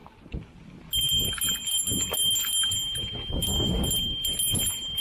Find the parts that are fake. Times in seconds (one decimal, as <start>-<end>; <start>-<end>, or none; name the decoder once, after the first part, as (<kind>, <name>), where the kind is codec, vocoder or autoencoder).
none